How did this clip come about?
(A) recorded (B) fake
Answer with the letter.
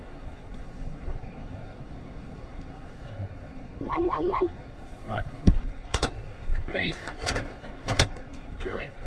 B